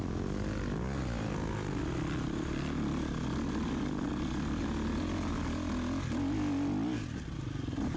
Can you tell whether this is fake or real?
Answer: real